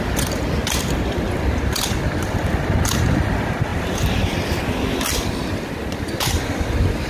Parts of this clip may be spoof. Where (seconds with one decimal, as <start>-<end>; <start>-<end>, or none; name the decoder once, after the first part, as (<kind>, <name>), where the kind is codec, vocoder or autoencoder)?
none